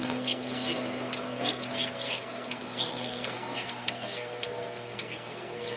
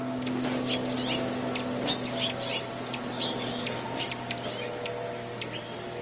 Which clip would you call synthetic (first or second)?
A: first